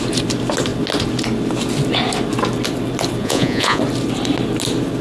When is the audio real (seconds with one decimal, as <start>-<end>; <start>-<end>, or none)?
0.0-3.2; 3.8-5.0